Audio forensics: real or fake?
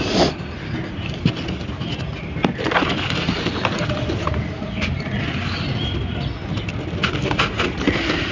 real